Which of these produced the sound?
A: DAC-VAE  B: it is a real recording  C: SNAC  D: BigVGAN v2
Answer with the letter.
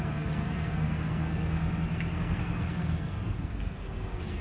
C